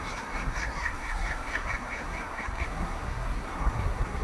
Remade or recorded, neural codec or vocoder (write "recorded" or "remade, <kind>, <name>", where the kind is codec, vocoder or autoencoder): remade, codec, SNAC